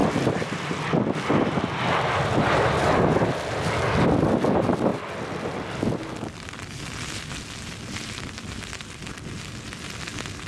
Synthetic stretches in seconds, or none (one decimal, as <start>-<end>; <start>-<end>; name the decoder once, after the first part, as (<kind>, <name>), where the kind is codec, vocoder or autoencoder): none